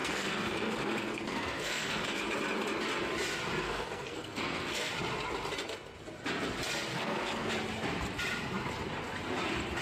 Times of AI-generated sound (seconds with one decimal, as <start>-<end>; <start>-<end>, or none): 0.0-2.2; 3.6-4.9; 6.9-7.5

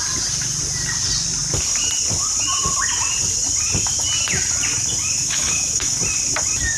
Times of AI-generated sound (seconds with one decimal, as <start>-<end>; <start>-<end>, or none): 5.2-6.0

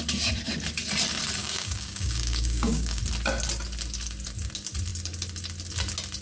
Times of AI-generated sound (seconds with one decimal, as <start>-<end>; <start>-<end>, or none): 1.4-3.0

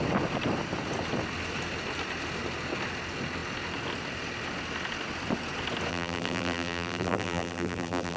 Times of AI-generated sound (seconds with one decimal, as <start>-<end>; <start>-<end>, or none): 5.9-8.2

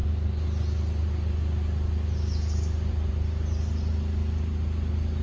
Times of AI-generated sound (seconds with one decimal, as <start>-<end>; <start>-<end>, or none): none

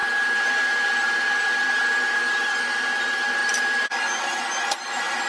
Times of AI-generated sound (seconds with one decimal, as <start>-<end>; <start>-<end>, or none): none